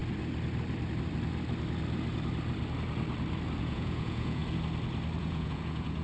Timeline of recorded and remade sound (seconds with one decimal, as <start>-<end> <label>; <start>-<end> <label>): 0.0-3.6 recorded; 3.6-4.4 remade; 4.4-5.2 recorded; 5.2-6.0 remade